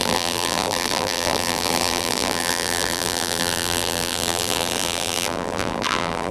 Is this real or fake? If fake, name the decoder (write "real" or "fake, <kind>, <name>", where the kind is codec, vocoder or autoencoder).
fake, vocoder, BigVGAN v2